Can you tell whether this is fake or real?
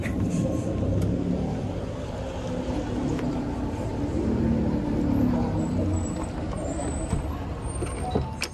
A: real